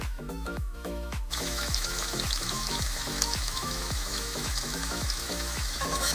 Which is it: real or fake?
fake